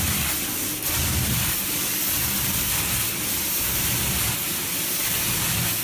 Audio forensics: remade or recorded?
recorded